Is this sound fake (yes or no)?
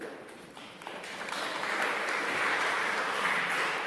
yes